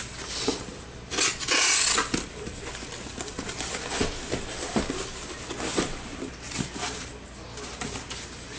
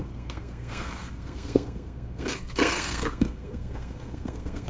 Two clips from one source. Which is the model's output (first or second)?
second